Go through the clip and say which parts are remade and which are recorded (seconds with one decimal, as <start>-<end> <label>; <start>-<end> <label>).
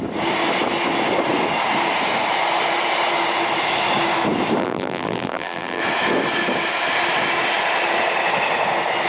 0.0-4.6 recorded; 4.6-5.8 remade; 5.8-9.1 recorded